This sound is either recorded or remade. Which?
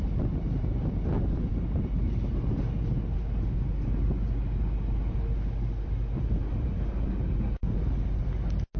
recorded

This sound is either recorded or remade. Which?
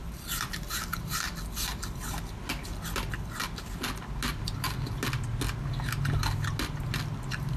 recorded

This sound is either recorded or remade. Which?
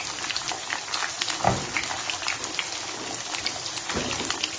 recorded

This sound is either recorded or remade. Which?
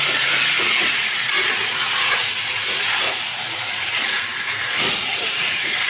remade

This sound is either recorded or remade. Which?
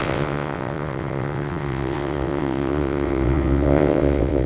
remade